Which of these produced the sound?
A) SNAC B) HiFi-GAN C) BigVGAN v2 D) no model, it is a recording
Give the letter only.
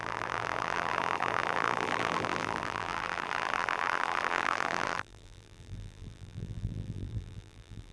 C